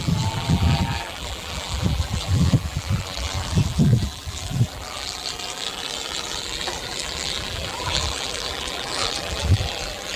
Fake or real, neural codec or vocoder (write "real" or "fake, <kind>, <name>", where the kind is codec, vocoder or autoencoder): fake, vocoder, BigVGAN v2